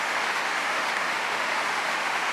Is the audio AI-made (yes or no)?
yes